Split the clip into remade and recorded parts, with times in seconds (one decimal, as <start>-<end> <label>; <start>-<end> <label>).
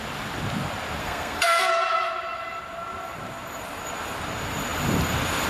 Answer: 0.0-1.0 recorded; 1.0-1.7 remade; 1.7-5.5 recorded